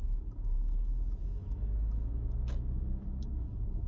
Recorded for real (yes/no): no